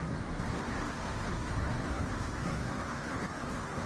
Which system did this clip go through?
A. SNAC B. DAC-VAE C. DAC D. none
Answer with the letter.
A